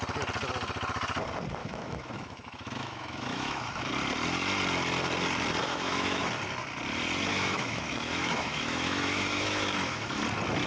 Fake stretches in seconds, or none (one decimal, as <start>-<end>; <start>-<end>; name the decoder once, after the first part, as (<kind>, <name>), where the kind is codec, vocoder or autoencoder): 1.6-3.9 (autoencoder, DAC-VAE); 5.6-6.2; 7.3-10.2